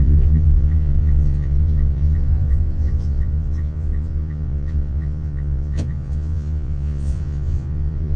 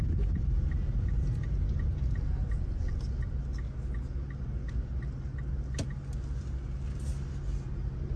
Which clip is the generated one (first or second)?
first